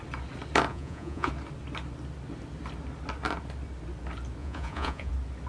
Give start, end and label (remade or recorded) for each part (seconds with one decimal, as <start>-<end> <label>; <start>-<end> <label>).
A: 0.0-0.7 recorded; 0.7-1.3 remade; 1.3-4.4 recorded; 4.4-5.1 remade; 5.1-5.5 recorded